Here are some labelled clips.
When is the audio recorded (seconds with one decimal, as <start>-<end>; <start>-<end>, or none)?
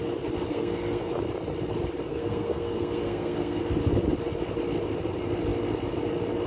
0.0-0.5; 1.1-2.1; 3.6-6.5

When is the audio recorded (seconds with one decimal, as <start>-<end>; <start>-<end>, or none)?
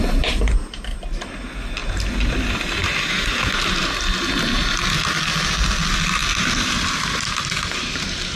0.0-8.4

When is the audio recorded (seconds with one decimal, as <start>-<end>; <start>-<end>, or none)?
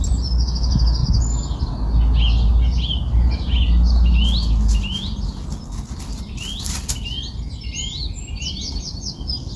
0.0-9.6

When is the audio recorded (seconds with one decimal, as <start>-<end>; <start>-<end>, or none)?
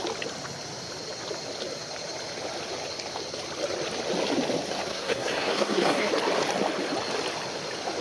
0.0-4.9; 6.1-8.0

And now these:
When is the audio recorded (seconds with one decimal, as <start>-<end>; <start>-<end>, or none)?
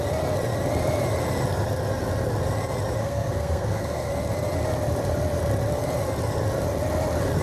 0.0-3.0; 4.1-7.4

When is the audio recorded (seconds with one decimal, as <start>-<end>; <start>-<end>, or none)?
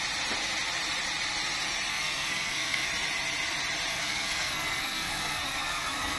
0.0-1.9; 2.9-3.9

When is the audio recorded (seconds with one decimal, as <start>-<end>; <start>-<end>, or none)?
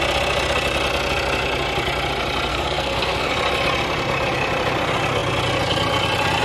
0.0-2.5; 3.3-6.4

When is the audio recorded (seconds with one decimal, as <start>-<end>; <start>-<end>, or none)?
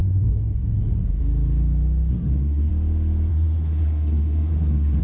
1.2-2.1; 2.7-3.3